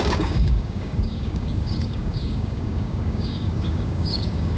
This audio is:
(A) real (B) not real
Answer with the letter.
B